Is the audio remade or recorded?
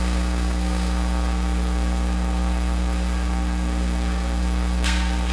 remade